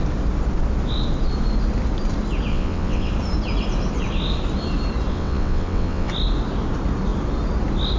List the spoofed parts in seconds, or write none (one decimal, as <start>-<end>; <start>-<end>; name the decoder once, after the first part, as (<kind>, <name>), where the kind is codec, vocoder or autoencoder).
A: 2.5-3.1 (vocoder, WaveNeXt); 5.1-6.1